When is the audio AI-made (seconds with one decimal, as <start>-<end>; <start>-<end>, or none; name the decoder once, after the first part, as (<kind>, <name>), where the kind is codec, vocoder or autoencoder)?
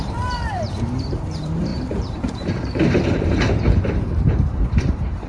0.0-5.3 (vocoder, BigVGAN v2)